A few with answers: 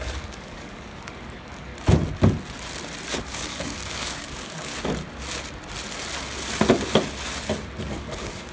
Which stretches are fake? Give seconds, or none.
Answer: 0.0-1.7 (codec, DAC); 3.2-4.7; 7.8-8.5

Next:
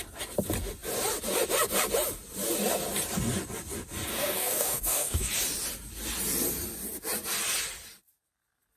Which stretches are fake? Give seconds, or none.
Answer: 4.1-5.3 (codec, DAC)